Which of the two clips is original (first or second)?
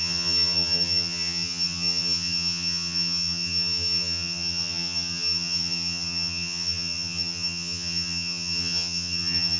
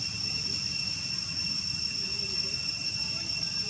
second